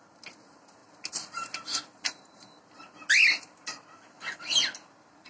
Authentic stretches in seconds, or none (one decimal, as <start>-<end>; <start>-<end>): 0.0-5.3